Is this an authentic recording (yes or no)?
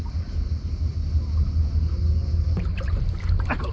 yes